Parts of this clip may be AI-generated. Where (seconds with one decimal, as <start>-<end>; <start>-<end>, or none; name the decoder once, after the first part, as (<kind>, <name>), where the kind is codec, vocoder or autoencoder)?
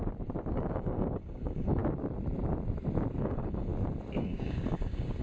0.5-1.8 (codec, DAC); 3.2-3.7; 4.2-5.2